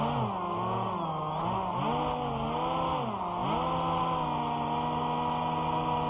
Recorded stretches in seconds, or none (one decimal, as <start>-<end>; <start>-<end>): 0.0-6.1